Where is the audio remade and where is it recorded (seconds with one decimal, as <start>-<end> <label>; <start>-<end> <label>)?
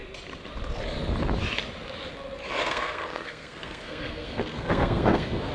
0.0-2.6 recorded; 2.6-5.5 remade